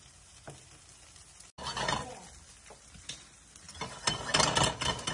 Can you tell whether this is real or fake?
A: real